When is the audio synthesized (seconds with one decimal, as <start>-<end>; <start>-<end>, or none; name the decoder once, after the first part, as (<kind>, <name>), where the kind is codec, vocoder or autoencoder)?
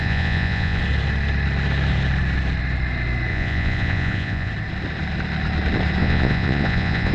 0.0-0.8 (vocoder, Vocos); 3.3-4.5; 6.0-7.1